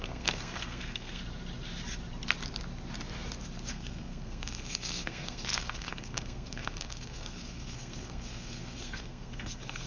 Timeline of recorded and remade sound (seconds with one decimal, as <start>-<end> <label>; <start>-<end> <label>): 0.0-1.2 remade; 1.2-3.7 recorded; 3.7-9.9 remade